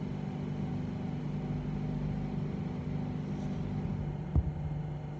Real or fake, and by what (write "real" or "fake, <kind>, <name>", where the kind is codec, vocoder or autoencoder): real